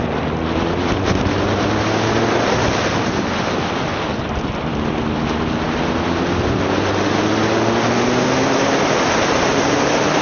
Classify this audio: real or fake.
real